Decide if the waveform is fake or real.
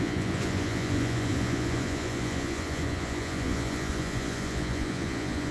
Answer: fake